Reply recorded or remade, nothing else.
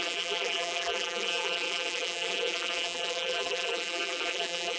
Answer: remade